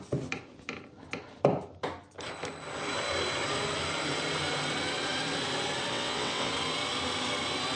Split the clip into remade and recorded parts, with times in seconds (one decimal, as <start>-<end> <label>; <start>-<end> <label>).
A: 0.0-5.9 recorded; 5.9-6.5 remade; 6.5-7.8 recorded